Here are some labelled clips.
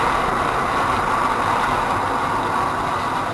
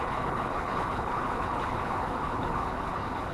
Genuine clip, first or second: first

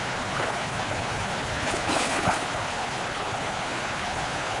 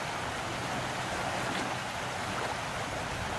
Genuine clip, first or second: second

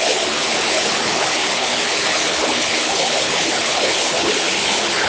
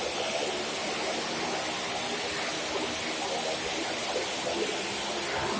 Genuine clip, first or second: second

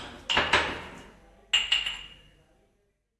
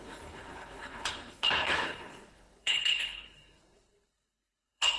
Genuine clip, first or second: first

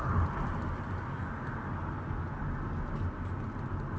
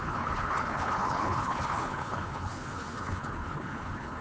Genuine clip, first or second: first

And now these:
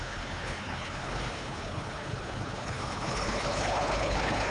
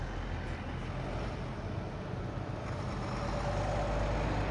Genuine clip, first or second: second